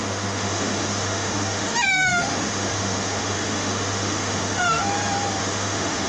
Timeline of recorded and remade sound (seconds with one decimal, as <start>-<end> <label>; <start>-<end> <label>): 0.0-4.8 remade; 4.8-5.4 recorded; 5.4-6.1 remade